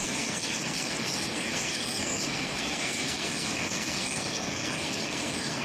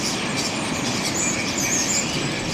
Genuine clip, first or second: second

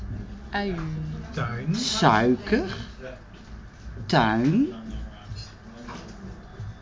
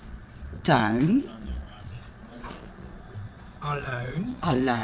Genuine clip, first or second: first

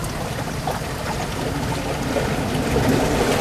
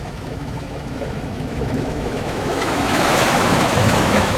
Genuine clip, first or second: first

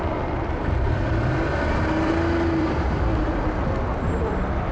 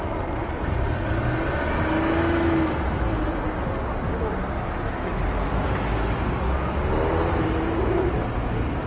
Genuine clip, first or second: second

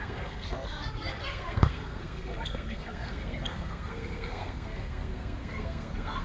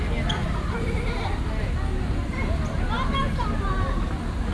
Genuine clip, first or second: second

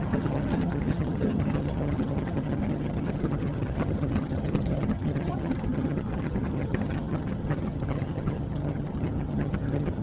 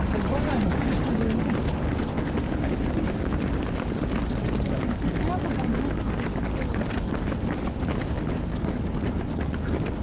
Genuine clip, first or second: second